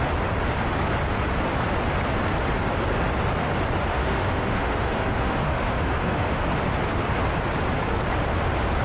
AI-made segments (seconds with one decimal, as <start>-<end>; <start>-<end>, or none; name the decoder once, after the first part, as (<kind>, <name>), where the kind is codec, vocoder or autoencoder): 3.9-6.4 (autoencoder, DAC-VAE)

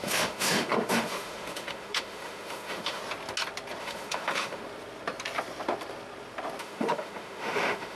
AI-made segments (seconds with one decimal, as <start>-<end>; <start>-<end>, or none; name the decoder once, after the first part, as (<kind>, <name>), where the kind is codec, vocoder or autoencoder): 0.0-3.0 (autoencoder, DAC-VAE); 3.8-4.6; 6.6-8.0

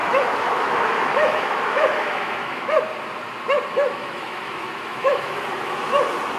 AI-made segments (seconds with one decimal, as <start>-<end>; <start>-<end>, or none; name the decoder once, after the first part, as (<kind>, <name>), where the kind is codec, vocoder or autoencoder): 0.0-2.8 (autoencoder, DAC-VAE); 3.7-5.4

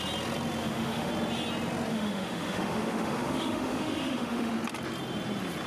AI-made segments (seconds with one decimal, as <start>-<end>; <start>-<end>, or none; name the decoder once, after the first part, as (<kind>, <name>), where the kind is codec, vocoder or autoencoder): 0.6-1.1 (autoencoder, DAC-VAE); 1.9-4.5

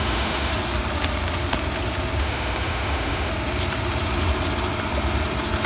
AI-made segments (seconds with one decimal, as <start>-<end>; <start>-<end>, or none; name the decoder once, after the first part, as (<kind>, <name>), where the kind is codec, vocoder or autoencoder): 0.0-0.5 (autoencoder, DAC-VAE); 2.2-3.3

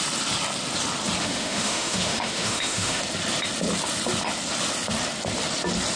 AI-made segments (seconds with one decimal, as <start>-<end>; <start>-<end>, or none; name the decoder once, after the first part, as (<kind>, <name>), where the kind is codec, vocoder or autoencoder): 1.2-3.0 (autoencoder, DAC-VAE)

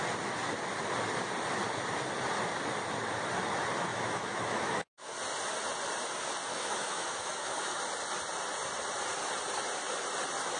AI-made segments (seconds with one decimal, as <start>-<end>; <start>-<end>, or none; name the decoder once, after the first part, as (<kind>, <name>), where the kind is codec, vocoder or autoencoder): 3.9-5.1 (autoencoder, DAC-VAE); 6.5-7.8